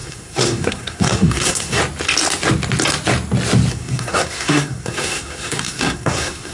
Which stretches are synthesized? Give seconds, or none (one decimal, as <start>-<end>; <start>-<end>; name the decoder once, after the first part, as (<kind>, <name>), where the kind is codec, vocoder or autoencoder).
0.0-1.8 (codec, SNAC); 3.7-6.5